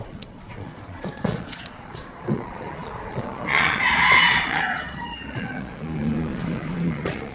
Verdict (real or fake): fake